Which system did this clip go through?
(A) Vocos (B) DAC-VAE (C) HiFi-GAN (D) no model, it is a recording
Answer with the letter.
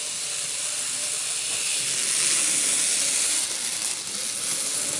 D